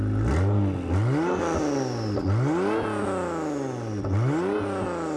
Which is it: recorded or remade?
recorded